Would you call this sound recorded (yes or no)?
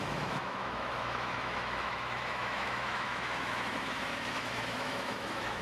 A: no